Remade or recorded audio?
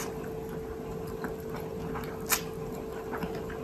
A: recorded